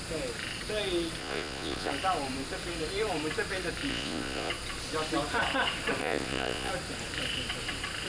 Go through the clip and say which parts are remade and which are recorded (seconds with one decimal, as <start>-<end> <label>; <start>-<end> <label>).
0.0-1.2 recorded; 1.2-1.9 remade; 1.9-3.9 recorded; 3.9-4.5 remade; 4.5-6.0 recorded; 6.0-6.7 remade; 6.7-8.1 recorded